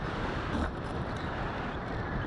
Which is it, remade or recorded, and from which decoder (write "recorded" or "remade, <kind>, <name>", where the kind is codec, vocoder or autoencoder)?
remade, vocoder, BigVGAN v2